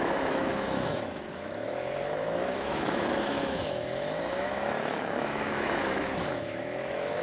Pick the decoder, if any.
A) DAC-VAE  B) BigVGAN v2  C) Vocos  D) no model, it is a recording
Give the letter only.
A